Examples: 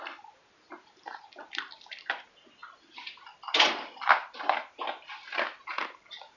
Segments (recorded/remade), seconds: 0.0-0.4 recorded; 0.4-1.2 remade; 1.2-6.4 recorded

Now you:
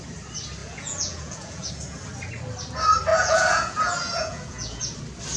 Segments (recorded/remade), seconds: 0.0-0.6 recorded; 0.6-1.7 remade; 1.7-3.1 recorded; 3.1-4.8 remade; 4.8-5.4 recorded

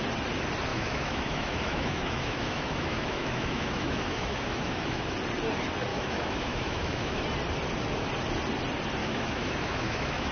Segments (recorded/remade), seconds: 0.0-0.7 recorded; 0.7-5.1 remade; 5.1-5.9 recorded; 5.9-7.2 remade; 7.2-9.0 recorded; 9.0-10.3 remade

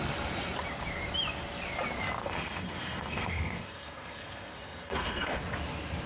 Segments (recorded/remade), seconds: 0.0-2.2 recorded; 2.2-5.4 remade; 5.4-6.1 recorded

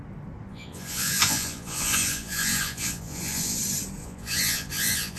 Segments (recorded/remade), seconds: 0.0-0.5 recorded; 0.5-3.6 remade; 3.6-4.0 recorded; 4.0-5.2 remade